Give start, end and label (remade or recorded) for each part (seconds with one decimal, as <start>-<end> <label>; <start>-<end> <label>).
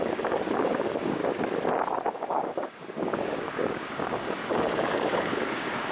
0.0-1.2 remade; 1.2-2.1 recorded; 2.1-5.9 remade